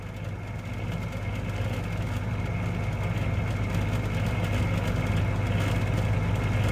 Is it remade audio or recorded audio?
recorded